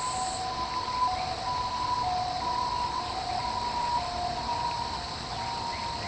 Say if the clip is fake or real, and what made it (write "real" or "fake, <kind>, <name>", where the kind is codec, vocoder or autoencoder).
real